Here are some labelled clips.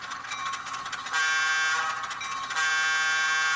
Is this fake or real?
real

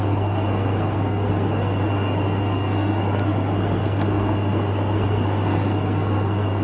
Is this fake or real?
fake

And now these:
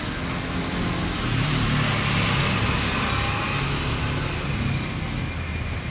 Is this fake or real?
real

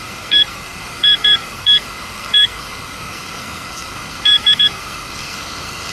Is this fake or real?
fake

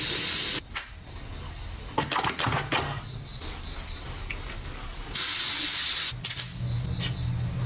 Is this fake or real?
real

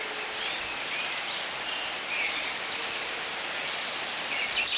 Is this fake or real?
real